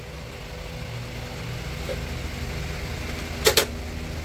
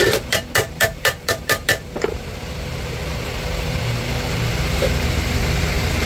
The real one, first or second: first